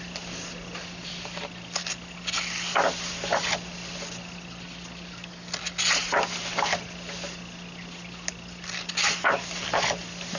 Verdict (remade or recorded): recorded